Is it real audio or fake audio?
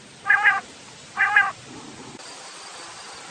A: real